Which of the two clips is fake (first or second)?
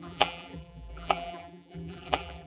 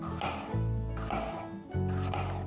first